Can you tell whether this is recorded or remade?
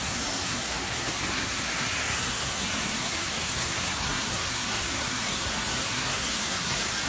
remade